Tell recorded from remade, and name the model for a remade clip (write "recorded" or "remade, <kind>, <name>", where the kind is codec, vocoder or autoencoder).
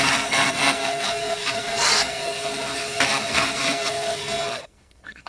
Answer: remade, codec, SNAC